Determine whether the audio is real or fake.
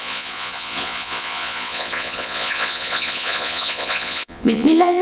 fake